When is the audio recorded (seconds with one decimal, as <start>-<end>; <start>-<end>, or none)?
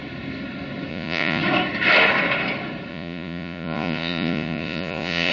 0.0-0.9; 1.4-2.9